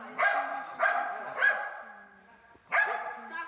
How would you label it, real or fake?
real